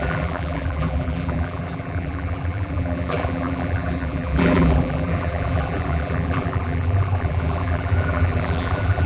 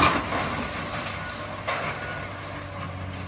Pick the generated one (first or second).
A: first